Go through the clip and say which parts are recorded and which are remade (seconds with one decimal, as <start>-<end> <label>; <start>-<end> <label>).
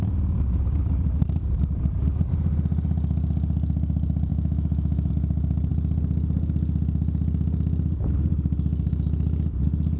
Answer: 0.0-4.3 recorded; 4.3-5.1 remade; 5.1-10.0 recorded